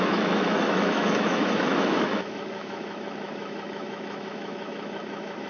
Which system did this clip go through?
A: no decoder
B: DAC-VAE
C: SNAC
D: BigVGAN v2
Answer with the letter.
B